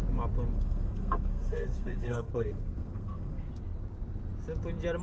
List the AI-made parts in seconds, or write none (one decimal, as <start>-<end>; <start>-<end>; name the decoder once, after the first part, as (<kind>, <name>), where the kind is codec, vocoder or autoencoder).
0.5-3.5 (codec, SNAC)